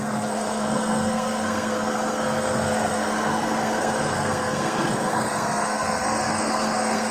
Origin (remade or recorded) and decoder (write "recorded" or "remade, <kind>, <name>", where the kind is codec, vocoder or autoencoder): remade, codec, SNAC